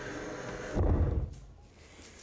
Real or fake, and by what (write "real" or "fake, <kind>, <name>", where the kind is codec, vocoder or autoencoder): real